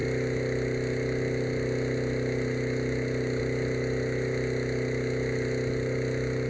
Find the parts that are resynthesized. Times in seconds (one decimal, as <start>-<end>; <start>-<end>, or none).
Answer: none